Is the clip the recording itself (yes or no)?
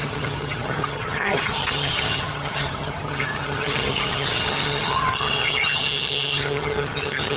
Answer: no